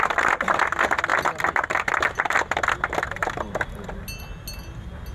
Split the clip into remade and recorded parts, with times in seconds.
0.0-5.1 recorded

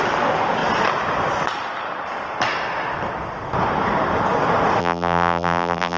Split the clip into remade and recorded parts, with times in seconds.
0.0-4.8 recorded; 4.8-6.0 remade

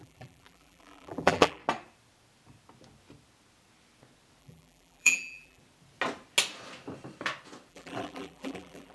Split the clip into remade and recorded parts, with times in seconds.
0.0-1.6 remade; 1.6-4.4 recorded; 4.4-5.6 remade; 5.6-7.7 recorded; 7.7-8.9 remade

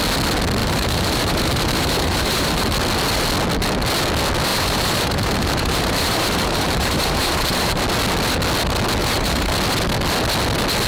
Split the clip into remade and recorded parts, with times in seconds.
0.0-0.6 recorded; 0.6-2.7 remade; 2.7-4.5 recorded; 4.5-7.8 remade; 7.8-9.0 recorded; 9.0-9.5 remade; 9.5-10.9 recorded